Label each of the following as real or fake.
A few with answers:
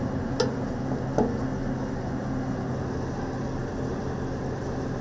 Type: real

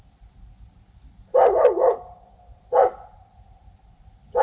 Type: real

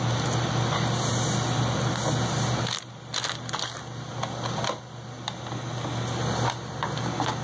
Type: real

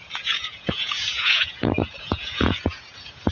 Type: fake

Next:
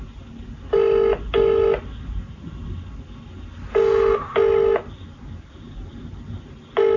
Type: real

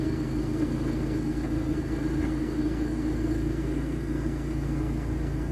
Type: fake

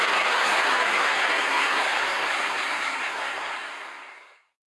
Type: fake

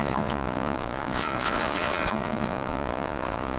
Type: fake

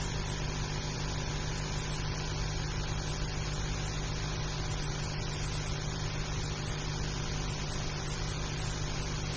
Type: real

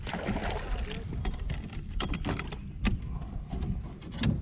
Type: real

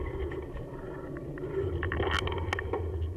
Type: real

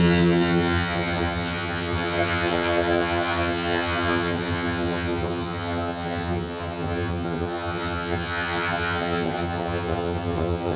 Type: fake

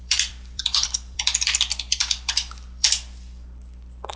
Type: fake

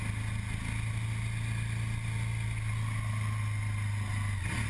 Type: real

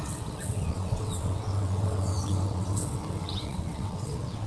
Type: fake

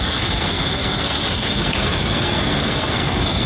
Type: fake